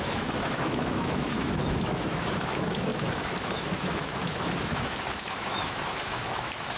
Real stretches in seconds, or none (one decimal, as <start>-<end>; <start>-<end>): none